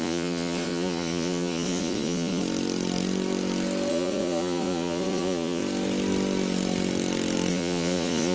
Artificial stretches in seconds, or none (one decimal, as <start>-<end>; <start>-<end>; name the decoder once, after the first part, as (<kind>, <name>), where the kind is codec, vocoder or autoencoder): 0.0-2.4 (vocoder, Vocos); 3.9-5.6; 7.5-8.3